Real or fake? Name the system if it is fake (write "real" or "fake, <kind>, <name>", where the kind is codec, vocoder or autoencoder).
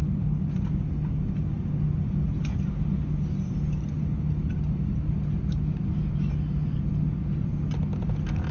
real